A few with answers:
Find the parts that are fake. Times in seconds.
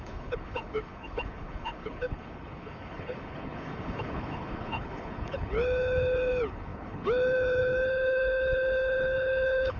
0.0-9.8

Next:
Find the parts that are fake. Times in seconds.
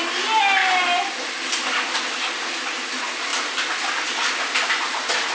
none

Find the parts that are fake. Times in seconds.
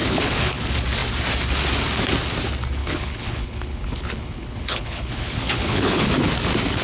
0.0-0.6; 2.8-6.1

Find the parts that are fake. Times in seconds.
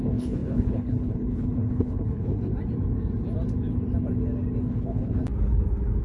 0.0-2.5; 4.7-5.2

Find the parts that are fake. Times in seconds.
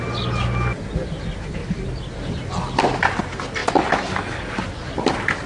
none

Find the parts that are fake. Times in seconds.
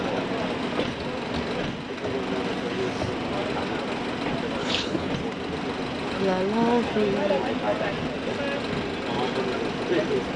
4.6-5.1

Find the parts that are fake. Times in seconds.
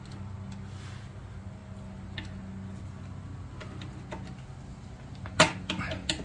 none